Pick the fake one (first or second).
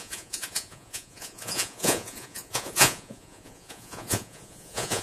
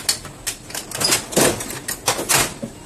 first